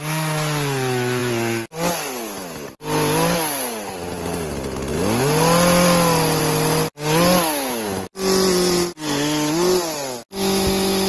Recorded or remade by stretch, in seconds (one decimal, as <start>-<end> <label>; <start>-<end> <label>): 0.0-11.1 recorded